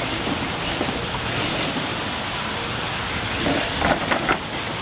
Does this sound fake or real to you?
real